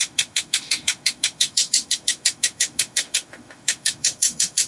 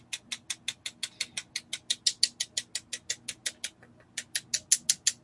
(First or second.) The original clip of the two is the second